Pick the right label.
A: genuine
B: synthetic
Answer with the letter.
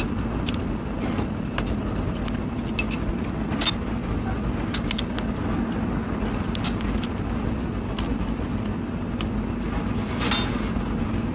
A